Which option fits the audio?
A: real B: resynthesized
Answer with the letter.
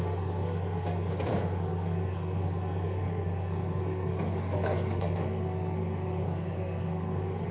B